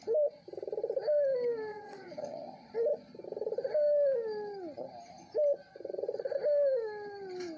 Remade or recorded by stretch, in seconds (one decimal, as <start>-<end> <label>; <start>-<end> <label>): 0.0-1.7 recorded; 1.7-2.7 remade; 2.7-5.7 recorded; 5.7-6.2 remade; 6.2-7.6 recorded